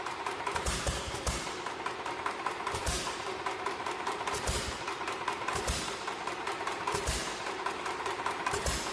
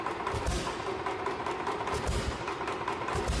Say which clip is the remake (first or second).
first